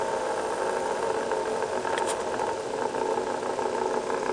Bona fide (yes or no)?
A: yes